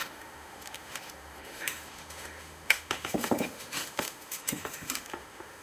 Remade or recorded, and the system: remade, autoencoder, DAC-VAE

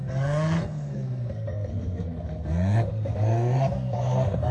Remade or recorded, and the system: remade, codec, SNAC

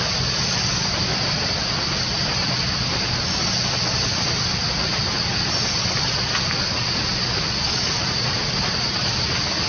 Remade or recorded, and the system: recorded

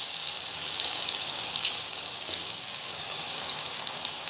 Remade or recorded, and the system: remade, codec, DAC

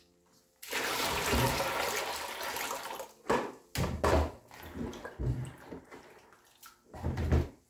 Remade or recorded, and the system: recorded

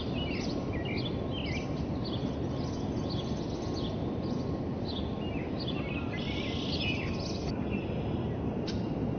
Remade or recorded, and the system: recorded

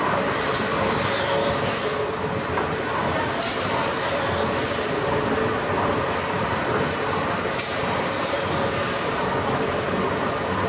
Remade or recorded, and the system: recorded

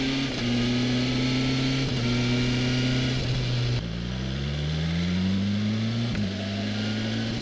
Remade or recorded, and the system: recorded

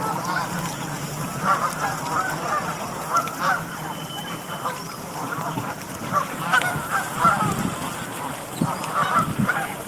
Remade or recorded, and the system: remade, vocoder, BigVGAN v2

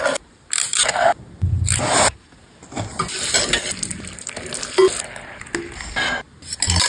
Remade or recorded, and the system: recorded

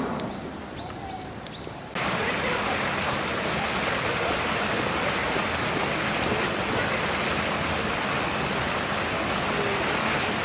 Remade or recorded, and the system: recorded